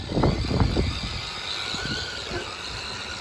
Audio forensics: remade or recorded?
recorded